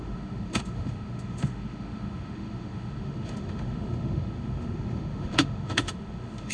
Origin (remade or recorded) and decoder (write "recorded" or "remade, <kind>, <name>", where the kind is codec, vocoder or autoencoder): remade, autoencoder, DAC-VAE